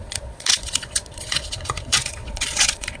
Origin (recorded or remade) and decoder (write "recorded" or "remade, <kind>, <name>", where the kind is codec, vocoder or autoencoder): remade, vocoder, Vocos